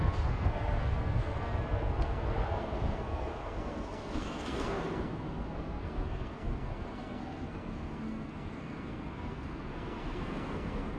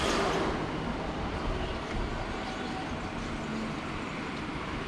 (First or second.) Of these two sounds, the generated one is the first